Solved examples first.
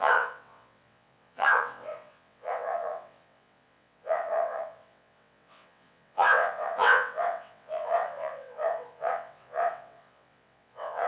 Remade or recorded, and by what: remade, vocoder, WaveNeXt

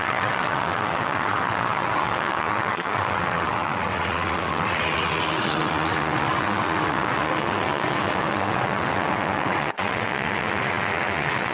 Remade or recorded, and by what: remade, vocoder, WaveNeXt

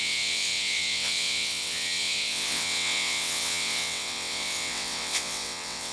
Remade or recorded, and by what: remade, vocoder, WaveNeXt